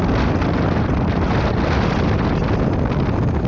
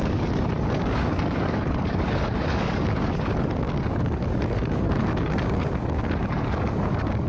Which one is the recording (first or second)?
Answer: first